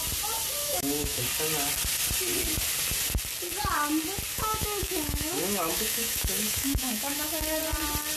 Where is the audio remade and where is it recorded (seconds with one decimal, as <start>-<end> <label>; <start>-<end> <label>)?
0.0-0.6 recorded; 0.6-1.2 remade; 1.2-4.3 recorded; 4.3-7.6 remade; 7.6-8.2 recorded